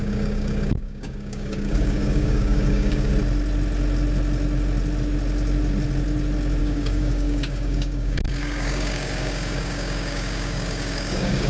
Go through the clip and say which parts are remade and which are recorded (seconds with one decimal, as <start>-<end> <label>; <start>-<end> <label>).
0.0-3.1 remade; 3.1-6.6 recorded; 6.6-11.5 remade